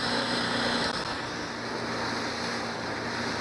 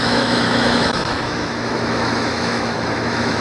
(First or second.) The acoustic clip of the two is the first